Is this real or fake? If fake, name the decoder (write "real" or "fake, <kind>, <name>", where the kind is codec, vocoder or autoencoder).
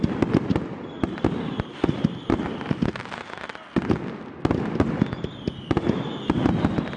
real